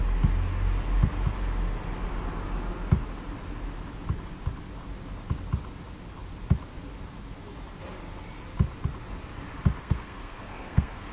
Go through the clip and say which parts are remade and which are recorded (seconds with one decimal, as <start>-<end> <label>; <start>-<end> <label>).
0.0-9.8 recorded; 9.8-11.1 remade